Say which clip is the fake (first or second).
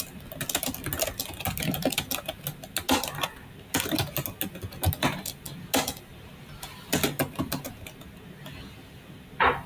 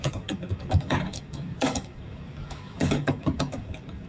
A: second